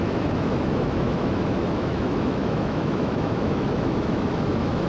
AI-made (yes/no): yes